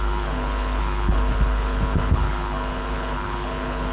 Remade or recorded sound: remade